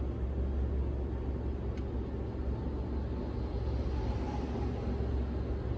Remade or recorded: recorded